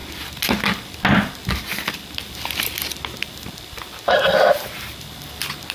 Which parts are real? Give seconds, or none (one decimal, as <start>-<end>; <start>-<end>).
0.0-5.7